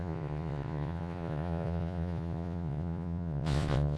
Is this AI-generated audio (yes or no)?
yes